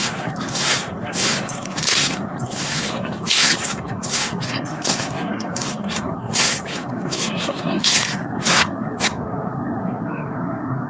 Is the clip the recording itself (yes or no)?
no